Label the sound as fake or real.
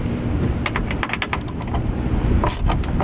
real